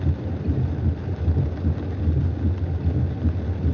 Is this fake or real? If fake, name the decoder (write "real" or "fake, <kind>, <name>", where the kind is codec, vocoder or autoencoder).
real